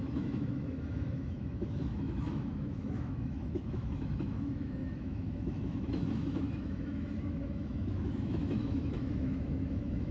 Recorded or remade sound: remade